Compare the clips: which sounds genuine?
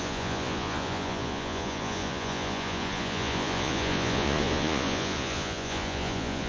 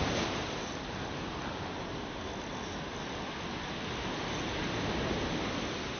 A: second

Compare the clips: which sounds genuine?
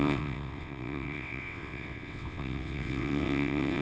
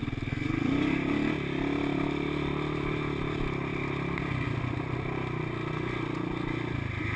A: second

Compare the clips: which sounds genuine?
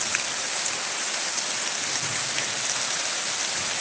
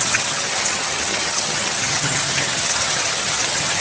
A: first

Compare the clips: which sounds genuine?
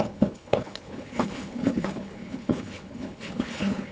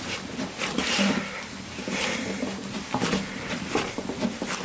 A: second